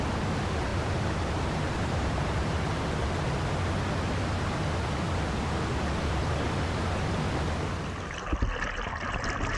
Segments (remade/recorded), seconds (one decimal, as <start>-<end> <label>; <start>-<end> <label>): 0.0-0.7 recorded; 0.7-3.1 remade; 3.1-9.6 recorded

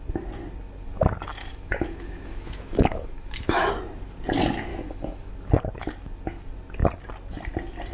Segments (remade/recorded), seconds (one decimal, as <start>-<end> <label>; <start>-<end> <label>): 0.0-1.4 recorded; 1.4-3.7 remade; 3.7-4.7 recorded; 4.7-5.3 remade; 5.3-7.9 recorded